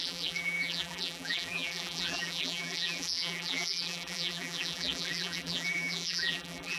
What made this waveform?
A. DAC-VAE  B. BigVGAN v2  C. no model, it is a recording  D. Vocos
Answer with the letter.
B